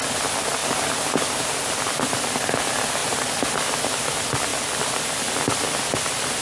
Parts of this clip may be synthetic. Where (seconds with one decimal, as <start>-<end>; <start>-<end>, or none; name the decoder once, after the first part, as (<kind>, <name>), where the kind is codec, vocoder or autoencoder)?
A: none